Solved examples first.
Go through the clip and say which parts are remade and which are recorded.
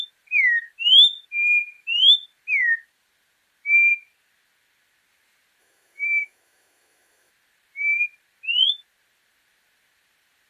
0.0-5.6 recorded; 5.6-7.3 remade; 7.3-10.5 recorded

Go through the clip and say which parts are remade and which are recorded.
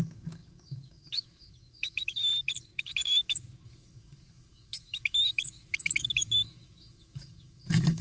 0.0-2.3 remade; 2.3-2.8 recorded; 2.8-8.0 remade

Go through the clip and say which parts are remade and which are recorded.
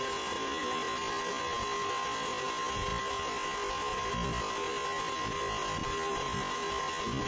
0.0-7.3 recorded